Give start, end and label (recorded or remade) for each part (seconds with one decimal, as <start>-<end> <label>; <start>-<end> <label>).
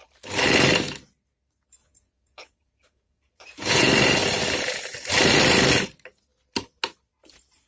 0.0-1.8 recorded; 1.8-3.9 remade; 3.9-7.7 recorded